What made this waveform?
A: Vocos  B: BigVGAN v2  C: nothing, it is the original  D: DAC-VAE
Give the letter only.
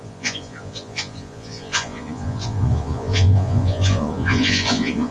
A